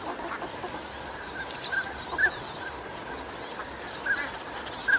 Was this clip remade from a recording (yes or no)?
no